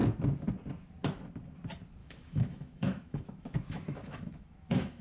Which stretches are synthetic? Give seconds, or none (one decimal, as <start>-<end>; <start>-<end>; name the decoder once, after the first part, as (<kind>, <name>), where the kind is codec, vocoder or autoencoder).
2.0-5.0 (autoencoder, DAC-VAE)